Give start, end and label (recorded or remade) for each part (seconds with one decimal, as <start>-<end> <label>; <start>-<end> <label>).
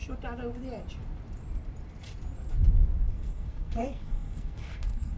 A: 0.0-3.1 recorded; 3.1-5.2 remade